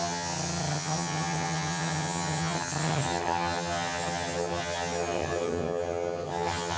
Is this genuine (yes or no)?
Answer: no